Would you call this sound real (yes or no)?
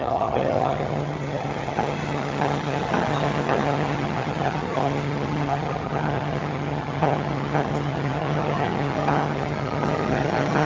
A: no